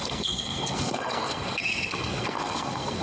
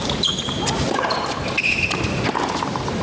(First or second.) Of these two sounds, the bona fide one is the second